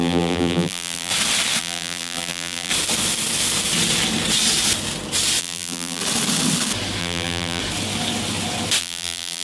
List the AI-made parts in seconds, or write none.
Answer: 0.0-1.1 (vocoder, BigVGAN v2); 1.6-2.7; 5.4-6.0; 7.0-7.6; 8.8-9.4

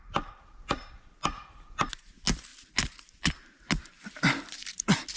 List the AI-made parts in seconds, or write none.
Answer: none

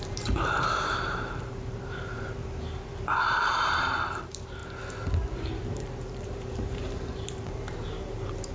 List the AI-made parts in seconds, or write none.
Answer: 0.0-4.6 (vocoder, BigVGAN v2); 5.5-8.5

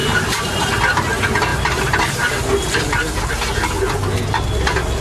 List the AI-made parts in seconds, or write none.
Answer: 0.0-0.7 (vocoder, BigVGAN v2); 1.5-3.3

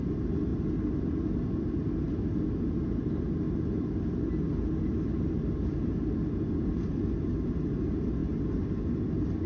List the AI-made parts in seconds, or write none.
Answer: none